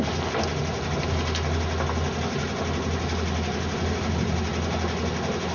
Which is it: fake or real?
real